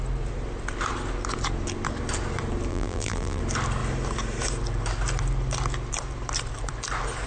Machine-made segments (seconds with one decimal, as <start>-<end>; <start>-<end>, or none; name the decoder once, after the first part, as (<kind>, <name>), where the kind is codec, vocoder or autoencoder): 2.7-3.4 (vocoder, BigVGAN v2)